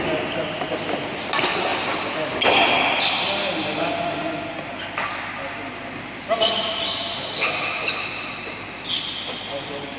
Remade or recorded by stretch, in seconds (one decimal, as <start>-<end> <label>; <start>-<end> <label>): 0.0-10.0 recorded